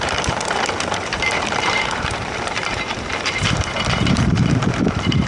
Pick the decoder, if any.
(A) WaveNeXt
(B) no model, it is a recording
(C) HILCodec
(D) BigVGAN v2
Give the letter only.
D